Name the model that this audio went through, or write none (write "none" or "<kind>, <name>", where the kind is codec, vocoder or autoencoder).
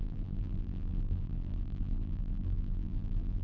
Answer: vocoder, BigVGAN v2